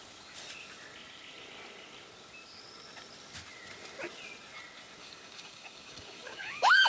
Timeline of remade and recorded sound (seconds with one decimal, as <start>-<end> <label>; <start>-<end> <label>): 0.0-5.0 recorded; 5.0-6.9 remade